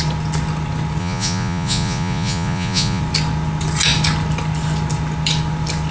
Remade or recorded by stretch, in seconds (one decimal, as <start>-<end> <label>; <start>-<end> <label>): 0.0-1.0 recorded; 1.0-3.0 remade; 3.0-5.9 recorded